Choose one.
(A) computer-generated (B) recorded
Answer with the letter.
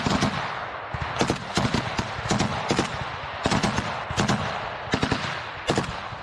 B